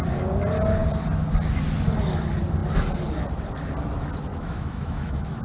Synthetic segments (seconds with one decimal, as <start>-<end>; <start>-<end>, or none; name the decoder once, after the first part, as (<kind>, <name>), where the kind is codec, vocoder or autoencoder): 4.3-5.4 (autoencoder, DAC-VAE)